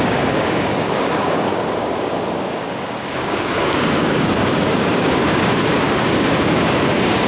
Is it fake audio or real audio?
fake